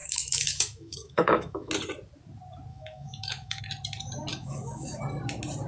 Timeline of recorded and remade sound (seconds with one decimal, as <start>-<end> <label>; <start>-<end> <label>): 0.0-1.7 remade; 1.7-2.7 recorded; 2.7-3.6 remade; 3.6-4.3 recorded; 4.3-5.0 remade; 5.0-5.7 recorded